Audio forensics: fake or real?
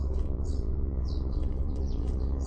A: fake